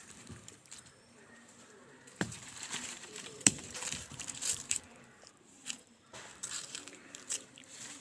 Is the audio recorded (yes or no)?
no